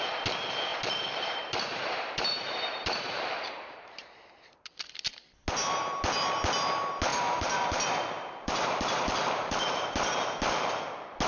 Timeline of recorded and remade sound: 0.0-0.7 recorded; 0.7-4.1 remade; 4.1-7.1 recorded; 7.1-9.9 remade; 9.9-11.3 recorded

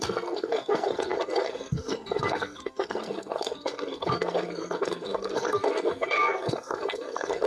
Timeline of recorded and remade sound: 0.0-7.5 remade